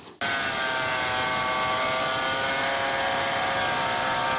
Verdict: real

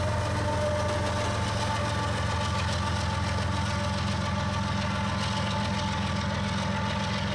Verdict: real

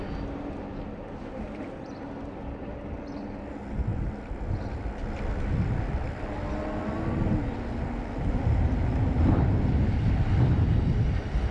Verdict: real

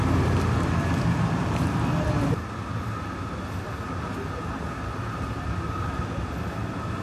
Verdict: real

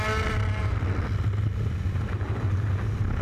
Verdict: real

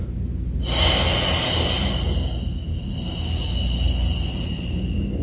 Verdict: real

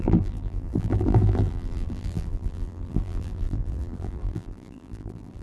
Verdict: fake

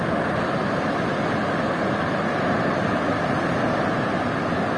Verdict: real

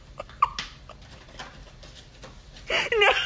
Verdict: real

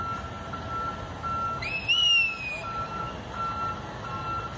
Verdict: real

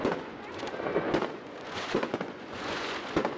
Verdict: fake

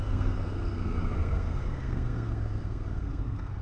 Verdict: fake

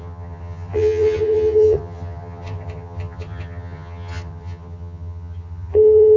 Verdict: fake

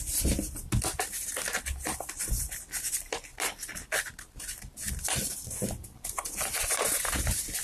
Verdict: real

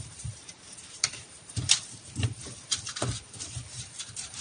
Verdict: fake